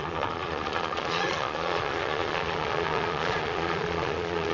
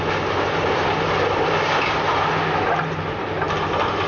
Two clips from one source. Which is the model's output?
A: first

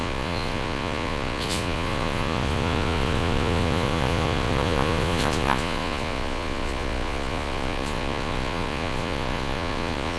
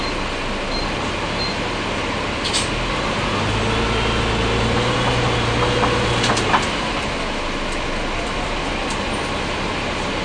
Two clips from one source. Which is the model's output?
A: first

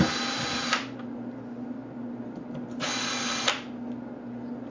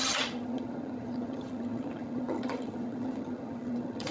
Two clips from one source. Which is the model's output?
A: second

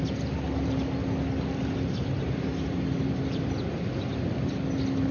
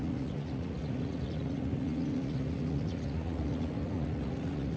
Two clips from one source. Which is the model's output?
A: second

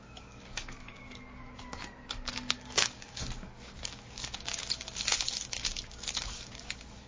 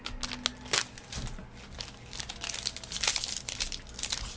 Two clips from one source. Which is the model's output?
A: first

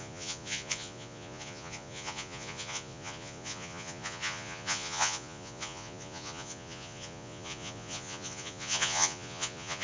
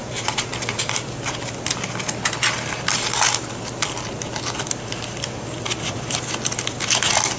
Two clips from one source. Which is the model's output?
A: first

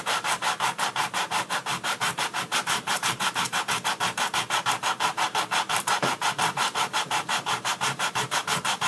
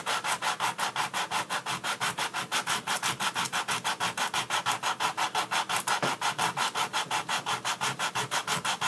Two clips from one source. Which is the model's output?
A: first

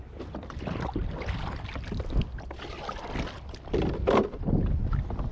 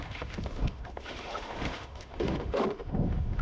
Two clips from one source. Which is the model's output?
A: second